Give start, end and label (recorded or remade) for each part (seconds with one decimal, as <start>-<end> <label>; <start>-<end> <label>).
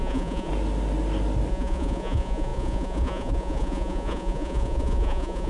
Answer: 0.0-0.5 remade; 0.5-1.5 recorded; 1.5-5.5 remade